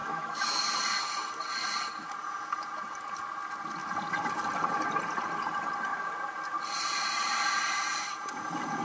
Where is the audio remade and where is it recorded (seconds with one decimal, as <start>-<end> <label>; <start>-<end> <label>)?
0.0-0.6 remade; 0.6-8.8 recorded